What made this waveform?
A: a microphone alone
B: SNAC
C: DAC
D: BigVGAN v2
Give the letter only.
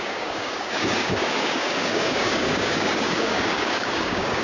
C